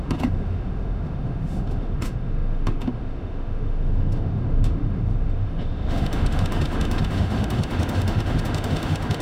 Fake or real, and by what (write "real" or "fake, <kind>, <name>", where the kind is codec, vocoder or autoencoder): fake, autoencoder, DAC-VAE